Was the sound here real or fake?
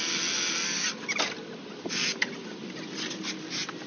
real